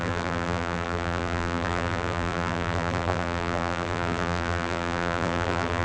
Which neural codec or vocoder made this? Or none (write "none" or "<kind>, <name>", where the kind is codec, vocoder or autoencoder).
vocoder, BigVGAN v2